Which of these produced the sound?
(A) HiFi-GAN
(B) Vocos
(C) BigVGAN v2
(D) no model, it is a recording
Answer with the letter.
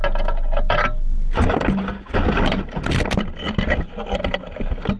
D